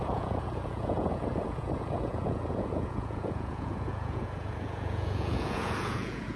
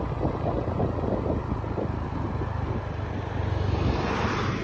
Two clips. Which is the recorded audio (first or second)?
second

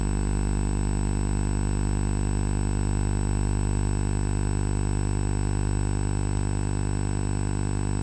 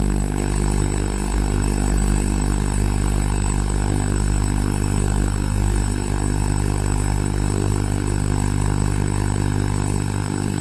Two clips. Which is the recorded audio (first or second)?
first